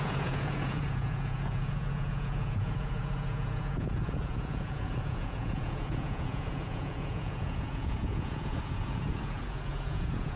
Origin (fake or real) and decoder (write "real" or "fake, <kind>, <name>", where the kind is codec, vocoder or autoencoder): fake, vocoder, Vocos